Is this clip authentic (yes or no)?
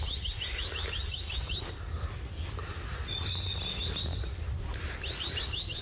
yes